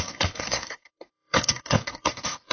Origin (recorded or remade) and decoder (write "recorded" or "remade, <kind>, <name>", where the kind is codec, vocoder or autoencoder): remade, codec, SNAC